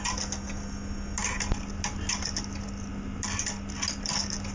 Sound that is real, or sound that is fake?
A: real